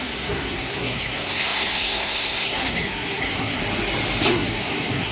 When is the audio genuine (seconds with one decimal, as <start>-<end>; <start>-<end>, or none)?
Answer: 3.6-4.3